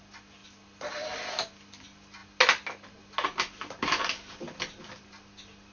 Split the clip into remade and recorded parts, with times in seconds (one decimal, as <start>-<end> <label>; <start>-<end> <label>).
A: 0.0-5.7 recorded